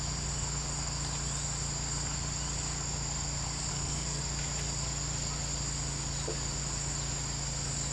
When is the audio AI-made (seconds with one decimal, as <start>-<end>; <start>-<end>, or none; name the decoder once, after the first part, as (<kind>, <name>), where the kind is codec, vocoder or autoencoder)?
3.7-4.2 (codec, SNAC)